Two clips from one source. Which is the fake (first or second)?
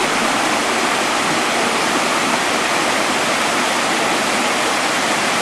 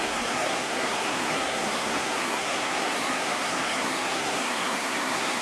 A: second